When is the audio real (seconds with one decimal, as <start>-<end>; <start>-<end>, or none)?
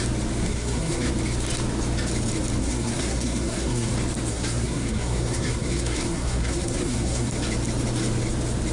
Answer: 0.0-0.4; 1.1-2.6; 3.9-4.3; 7.3-8.7